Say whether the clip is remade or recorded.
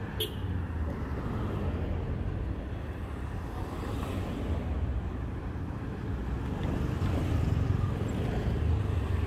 recorded